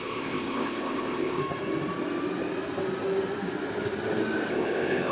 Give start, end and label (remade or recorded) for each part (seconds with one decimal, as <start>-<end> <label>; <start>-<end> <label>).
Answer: 0.0-1.4 remade; 1.4-4.5 recorded; 4.5-5.1 remade